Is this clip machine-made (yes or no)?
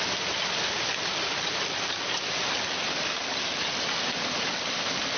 no